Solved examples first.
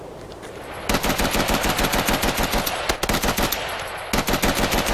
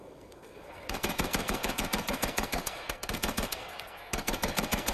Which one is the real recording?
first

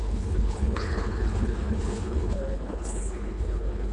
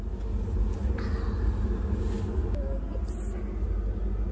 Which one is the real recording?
second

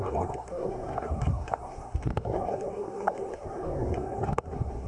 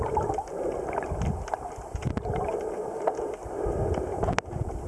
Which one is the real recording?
second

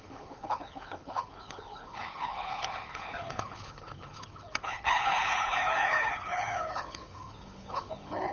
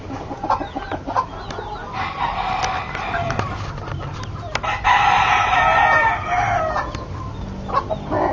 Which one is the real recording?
second